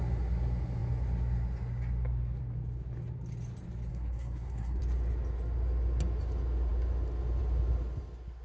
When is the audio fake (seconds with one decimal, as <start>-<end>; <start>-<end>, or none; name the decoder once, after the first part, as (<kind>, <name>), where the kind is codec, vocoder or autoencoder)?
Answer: 3.9-4.8 (codec, SNAC)